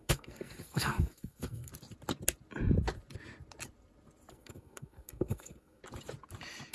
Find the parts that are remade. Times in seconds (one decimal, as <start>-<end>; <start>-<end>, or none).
0.0-1.7; 4.3-5.8

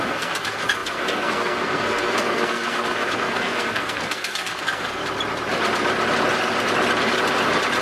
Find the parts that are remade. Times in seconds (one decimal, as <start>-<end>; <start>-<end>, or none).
0.0-5.0

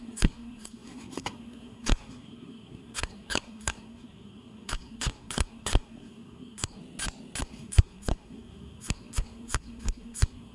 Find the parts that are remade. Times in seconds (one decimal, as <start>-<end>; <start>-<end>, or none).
0.0-6.8; 7.4-10.5